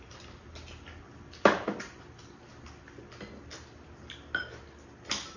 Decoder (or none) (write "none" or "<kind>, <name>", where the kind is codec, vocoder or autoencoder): none